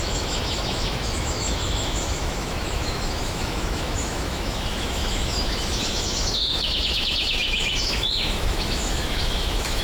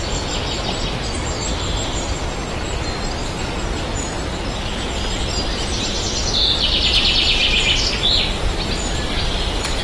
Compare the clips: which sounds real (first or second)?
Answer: second